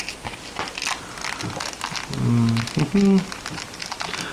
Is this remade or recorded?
recorded